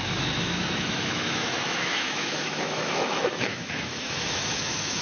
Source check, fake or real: fake